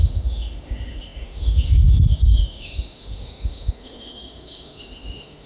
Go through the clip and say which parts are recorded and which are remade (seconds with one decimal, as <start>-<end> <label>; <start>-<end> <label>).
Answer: 0.0-5.5 remade